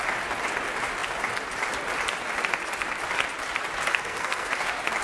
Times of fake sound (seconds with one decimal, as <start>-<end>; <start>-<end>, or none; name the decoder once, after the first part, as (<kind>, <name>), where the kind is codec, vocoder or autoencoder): 3.9-4.5 (codec, SNAC)